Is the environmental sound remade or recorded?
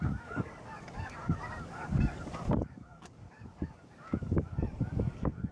remade